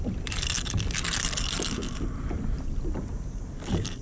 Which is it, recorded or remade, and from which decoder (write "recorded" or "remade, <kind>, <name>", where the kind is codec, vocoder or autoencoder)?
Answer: recorded